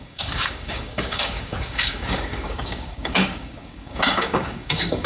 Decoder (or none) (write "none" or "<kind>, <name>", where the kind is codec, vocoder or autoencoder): codec, DAC